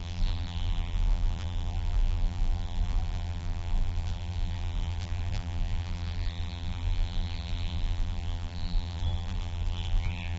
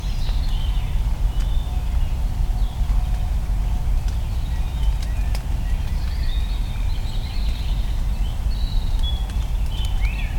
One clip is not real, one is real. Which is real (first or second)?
second